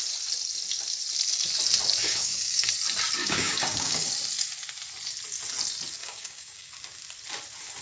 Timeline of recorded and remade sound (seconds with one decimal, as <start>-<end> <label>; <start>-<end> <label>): 0.0-2.0 recorded; 2.0-2.7 remade; 2.7-3.2 recorded; 3.2-4.1 remade; 4.1-6.0 recorded; 6.0-6.7 remade; 6.7-7.8 recorded